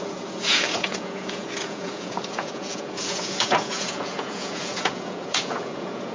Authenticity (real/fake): fake